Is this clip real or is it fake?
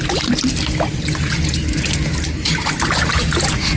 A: real